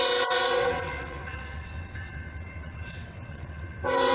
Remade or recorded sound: remade